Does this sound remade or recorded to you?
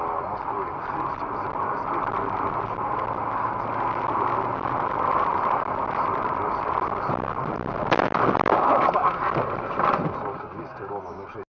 recorded